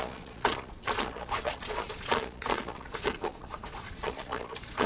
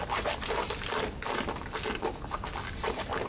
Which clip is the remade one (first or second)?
first